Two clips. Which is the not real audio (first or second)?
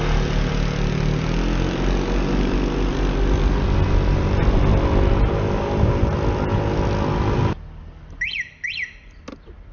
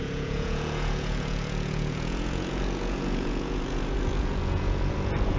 second